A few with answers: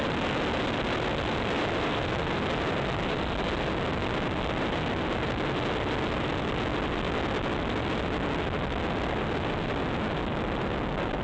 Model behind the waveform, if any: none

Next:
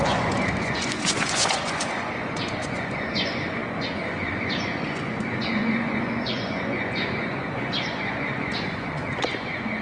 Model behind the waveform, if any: vocoder, Vocos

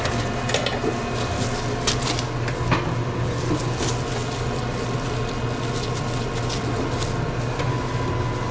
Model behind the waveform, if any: none